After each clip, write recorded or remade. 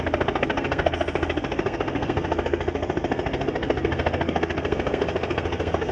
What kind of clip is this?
remade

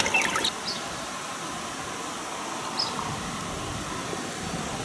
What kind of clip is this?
recorded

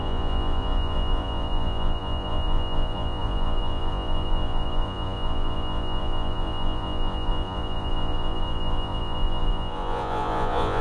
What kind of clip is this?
remade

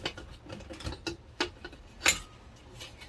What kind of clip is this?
recorded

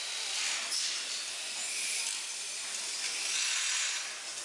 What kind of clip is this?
recorded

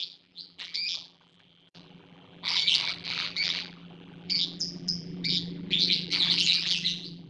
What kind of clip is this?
remade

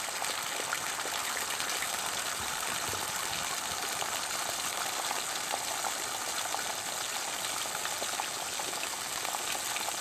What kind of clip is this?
recorded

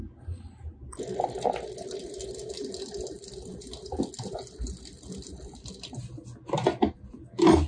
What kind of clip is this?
recorded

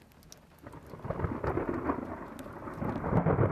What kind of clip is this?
recorded